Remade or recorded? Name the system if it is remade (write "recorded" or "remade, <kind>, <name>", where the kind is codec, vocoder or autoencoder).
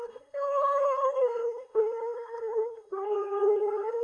remade, codec, SNAC